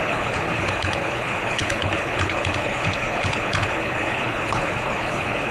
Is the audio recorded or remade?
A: remade